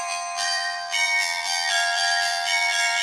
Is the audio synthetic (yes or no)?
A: yes